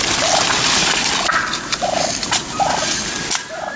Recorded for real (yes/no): yes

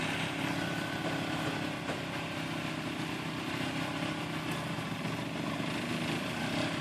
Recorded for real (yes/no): yes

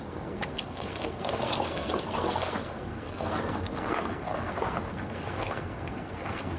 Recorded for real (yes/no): no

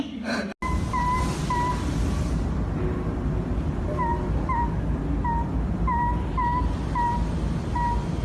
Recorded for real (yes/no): yes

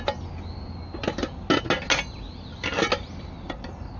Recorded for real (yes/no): yes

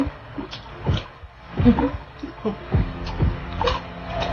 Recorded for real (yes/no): no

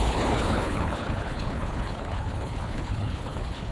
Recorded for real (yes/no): no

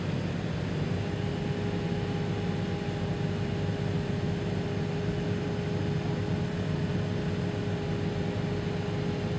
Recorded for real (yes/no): yes